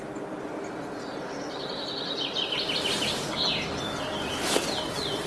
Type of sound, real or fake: real